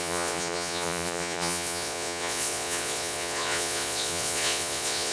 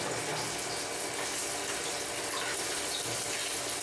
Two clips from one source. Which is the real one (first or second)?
second